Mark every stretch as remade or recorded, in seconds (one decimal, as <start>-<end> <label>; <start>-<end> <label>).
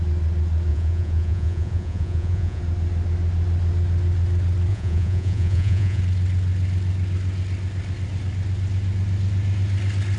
0.0-0.7 recorded; 0.7-2.6 remade; 2.6-4.7 recorded; 4.7-6.0 remade; 6.0-10.2 recorded